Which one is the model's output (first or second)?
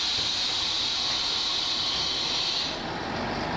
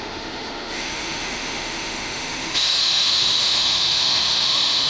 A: second